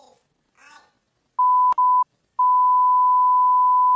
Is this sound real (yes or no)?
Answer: yes